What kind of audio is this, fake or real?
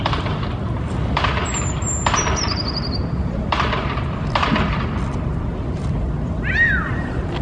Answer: fake